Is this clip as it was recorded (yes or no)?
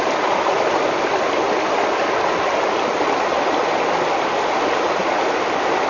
yes